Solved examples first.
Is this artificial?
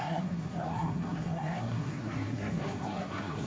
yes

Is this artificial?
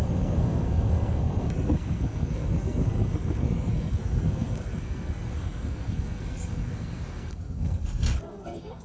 yes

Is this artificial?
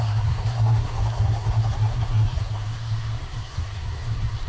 yes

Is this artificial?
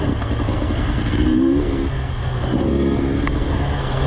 yes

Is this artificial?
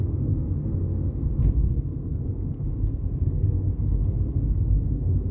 yes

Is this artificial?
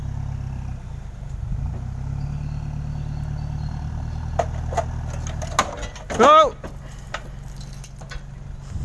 no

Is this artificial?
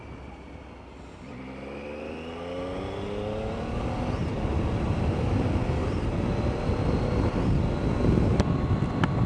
no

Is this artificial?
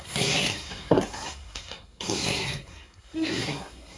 yes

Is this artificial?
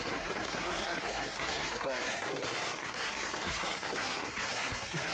yes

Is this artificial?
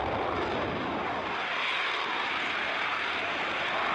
no